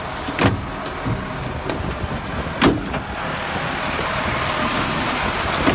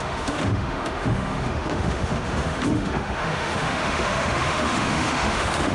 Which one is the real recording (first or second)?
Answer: first